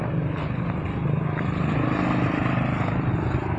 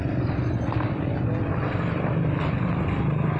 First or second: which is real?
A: first